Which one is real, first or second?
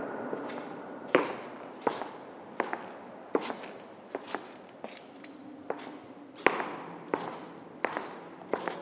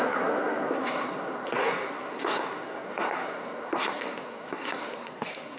first